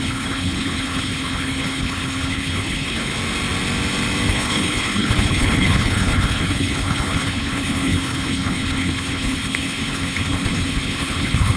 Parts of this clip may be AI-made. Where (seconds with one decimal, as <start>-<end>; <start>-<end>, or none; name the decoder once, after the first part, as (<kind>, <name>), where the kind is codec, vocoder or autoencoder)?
0.0-3.1 (codec, HILCodec); 4.3-11.6